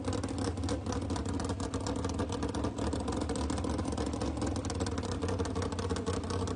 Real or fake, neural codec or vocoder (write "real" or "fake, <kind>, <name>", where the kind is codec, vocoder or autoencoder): real